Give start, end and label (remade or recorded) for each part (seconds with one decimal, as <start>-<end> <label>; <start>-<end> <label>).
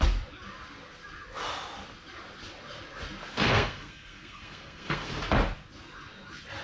0.0-3.3 recorded; 3.3-5.1 remade; 5.1-6.6 recorded